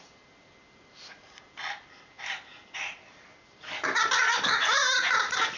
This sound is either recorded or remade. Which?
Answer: recorded